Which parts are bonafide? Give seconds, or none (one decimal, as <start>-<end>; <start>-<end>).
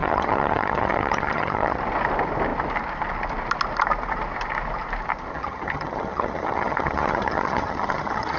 1.8-5.3